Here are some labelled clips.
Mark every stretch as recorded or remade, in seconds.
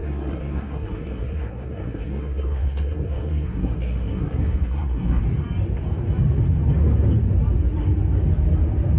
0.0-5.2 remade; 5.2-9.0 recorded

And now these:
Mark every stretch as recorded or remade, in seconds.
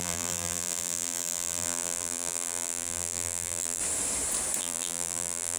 0.0-3.8 remade; 3.8-4.6 recorded; 4.6-5.6 remade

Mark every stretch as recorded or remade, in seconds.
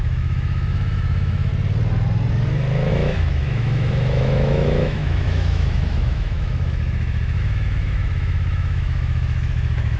0.0-1.5 remade; 1.5-2.9 recorded; 2.9-10.0 remade